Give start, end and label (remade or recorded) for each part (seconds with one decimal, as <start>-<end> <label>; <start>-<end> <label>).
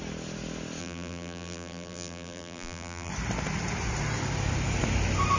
0.0-0.8 recorded; 0.8-3.1 remade; 3.1-5.4 recorded